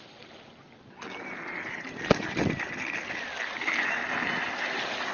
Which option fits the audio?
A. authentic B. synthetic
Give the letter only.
A